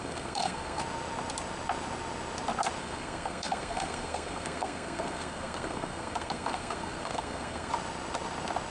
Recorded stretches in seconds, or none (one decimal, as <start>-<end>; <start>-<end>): 0.8-2.8; 7.7-8.7